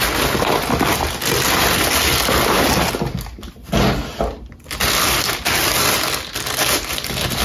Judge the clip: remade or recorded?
recorded